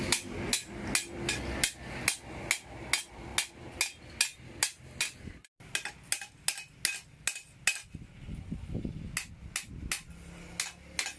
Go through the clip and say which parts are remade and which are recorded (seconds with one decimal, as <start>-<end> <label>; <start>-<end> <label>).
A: 0.0-11.2 recorded